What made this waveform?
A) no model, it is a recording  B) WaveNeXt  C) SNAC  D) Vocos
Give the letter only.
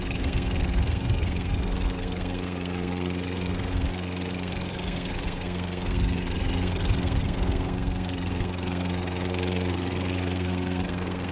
C